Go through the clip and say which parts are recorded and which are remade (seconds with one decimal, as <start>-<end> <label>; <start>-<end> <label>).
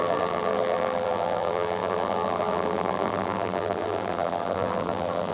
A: 0.0-5.3 remade